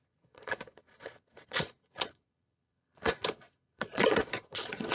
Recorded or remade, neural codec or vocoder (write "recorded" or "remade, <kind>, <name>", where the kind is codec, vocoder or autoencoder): remade, vocoder, Vocos